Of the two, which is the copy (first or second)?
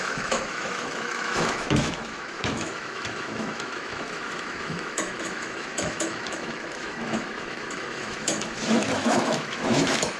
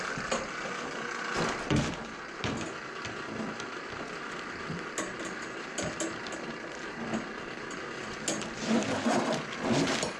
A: first